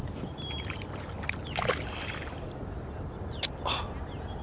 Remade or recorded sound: recorded